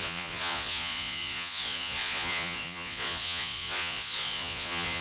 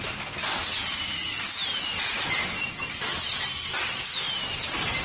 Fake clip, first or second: first